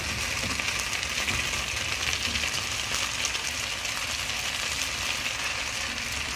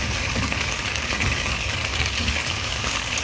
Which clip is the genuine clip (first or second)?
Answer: first